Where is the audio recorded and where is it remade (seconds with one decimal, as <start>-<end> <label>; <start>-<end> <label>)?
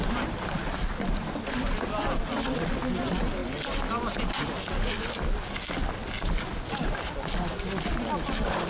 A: 0.0-8.7 recorded